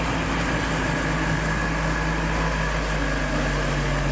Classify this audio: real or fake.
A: real